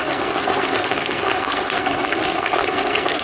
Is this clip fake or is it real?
fake